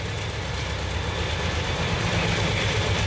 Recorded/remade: recorded